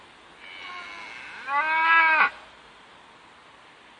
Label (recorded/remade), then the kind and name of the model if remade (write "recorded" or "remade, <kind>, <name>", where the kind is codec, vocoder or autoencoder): recorded